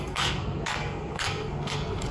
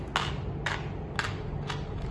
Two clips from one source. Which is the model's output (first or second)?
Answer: first